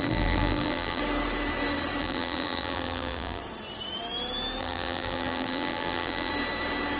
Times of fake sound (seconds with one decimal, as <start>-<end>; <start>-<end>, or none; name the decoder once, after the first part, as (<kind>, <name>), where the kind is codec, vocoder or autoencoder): 0.0-1.0 (vocoder, BigVGAN v2); 2.0-3.4; 4.6-6.3